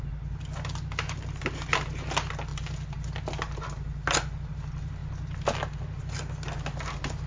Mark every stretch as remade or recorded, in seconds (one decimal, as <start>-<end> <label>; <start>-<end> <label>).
0.0-7.3 recorded